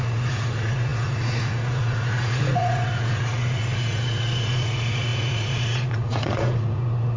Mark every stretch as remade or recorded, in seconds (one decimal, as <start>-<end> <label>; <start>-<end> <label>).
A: 0.0-7.2 remade